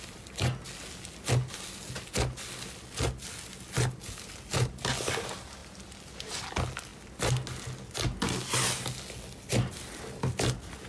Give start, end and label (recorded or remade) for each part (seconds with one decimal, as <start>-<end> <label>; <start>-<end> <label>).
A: 0.0-10.9 recorded